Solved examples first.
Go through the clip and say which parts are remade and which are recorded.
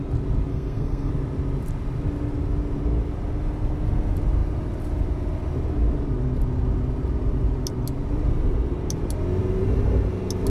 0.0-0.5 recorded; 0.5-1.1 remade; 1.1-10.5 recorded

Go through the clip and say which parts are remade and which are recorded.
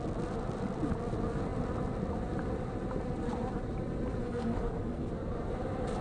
0.0-4.2 recorded; 4.2-5.1 remade; 5.1-6.0 recorded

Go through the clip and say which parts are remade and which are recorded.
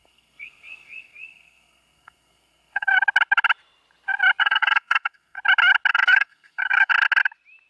0.0-2.9 remade; 2.9-4.4 recorded; 4.4-5.4 remade; 5.4-5.9 recorded; 5.9-6.9 remade; 6.9-7.7 recorded